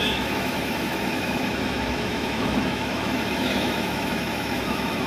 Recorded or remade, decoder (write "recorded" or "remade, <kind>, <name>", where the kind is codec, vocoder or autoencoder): remade, autoencoder, DAC-VAE